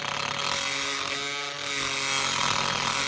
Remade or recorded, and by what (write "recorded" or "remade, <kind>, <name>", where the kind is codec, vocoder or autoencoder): recorded